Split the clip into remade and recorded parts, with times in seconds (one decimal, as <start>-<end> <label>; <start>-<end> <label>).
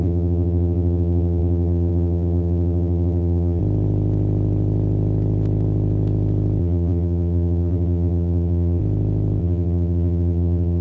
0.0-3.6 remade; 3.6-6.6 recorded; 6.6-8.8 remade; 8.8-9.4 recorded; 9.4-10.8 remade